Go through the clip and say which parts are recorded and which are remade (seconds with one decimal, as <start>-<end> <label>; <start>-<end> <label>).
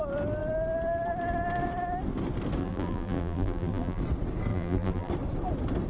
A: 0.0-2.6 recorded; 2.6-4.0 remade; 4.0-4.5 recorded; 4.5-5.1 remade; 5.1-5.9 recorded